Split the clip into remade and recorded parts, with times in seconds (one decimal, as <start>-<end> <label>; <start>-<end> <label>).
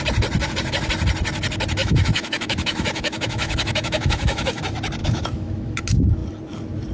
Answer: 0.0-1.8 recorded; 1.8-4.6 remade; 4.6-5.0 recorded; 5.0-5.8 remade; 5.8-6.9 recorded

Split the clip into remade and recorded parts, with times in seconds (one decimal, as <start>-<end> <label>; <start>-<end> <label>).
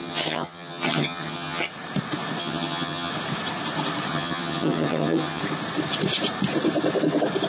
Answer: 0.0-1.7 remade; 1.7-2.4 recorded; 2.4-3.1 remade; 3.1-4.1 recorded; 4.1-5.4 remade; 5.4-7.5 recorded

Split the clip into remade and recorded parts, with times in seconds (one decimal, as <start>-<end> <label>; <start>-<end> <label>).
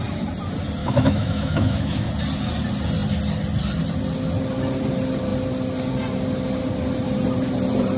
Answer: 0.0-0.8 recorded; 0.8-2.1 remade; 2.1-8.0 recorded